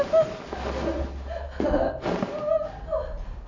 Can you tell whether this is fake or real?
real